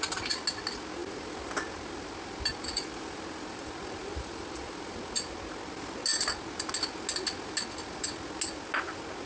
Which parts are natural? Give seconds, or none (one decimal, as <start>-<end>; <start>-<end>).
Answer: 0.0-1.0; 2.1-2.5; 5.3-9.3